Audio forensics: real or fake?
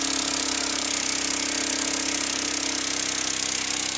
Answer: fake